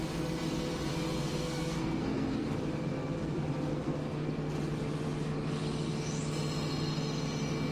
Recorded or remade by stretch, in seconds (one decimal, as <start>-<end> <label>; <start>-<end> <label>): 0.0-0.9 recorded; 0.9-4.5 remade; 4.5-7.7 recorded